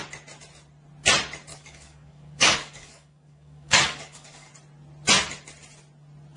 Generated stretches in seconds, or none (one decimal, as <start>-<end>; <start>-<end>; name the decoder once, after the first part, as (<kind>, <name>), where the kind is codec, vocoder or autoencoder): 1.5-4.5 (codec, DAC)